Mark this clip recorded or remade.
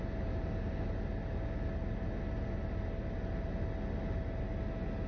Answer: recorded